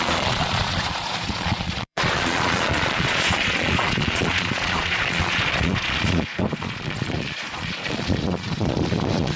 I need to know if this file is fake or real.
fake